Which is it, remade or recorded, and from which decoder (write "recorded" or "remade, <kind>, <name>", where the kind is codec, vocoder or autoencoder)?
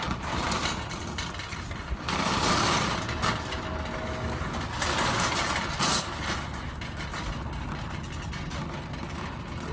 recorded